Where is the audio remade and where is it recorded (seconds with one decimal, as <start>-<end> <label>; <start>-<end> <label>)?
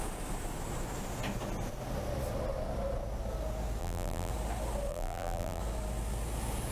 0.0-3.8 recorded; 3.8-4.3 remade; 4.3-4.9 recorded; 4.9-5.6 remade; 5.6-6.7 recorded